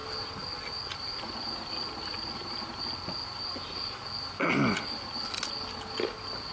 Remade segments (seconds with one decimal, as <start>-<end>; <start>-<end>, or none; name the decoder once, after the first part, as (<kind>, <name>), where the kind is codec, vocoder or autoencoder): none